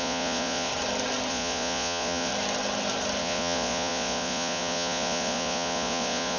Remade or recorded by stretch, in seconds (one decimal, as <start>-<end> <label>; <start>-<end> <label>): 0.0-0.7 remade; 0.7-1.3 recorded; 1.3-2.3 remade; 2.3-3.2 recorded; 3.2-6.4 remade